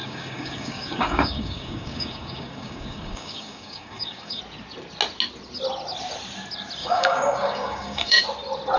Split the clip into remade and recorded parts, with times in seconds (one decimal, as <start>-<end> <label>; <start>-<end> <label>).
0.0-4.4 remade; 4.4-6.8 recorded; 6.8-8.2 remade; 8.2-8.8 recorded